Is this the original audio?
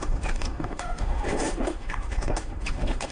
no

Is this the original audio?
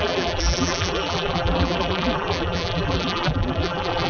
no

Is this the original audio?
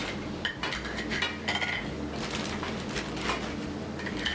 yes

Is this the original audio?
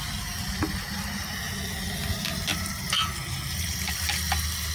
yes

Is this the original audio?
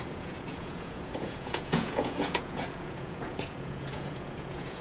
no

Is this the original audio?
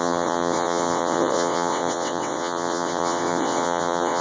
no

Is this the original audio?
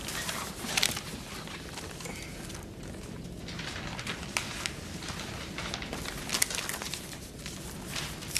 yes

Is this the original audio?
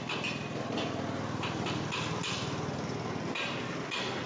yes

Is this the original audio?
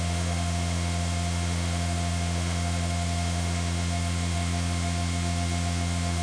no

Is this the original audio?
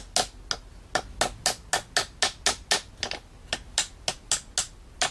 yes